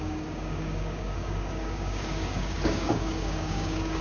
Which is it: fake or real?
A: fake